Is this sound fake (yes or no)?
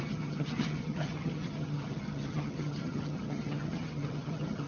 yes